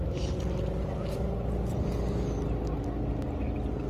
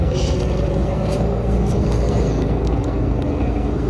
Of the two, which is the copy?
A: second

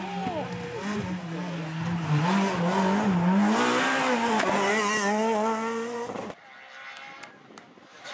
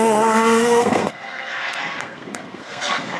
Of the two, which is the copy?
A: second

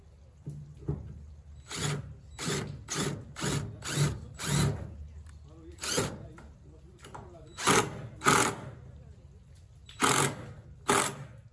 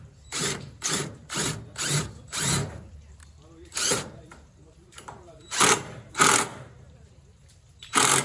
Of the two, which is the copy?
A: second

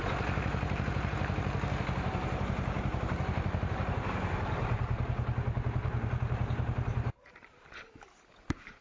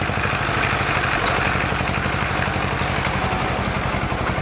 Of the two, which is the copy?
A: first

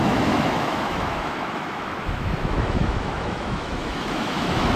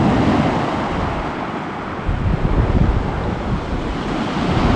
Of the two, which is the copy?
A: first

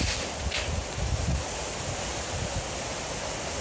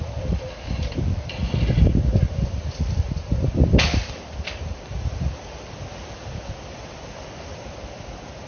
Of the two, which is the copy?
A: second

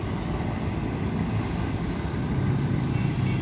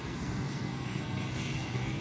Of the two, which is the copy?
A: second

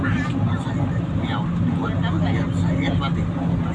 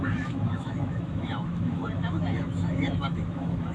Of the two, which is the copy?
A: second